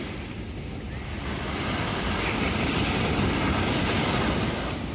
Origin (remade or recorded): recorded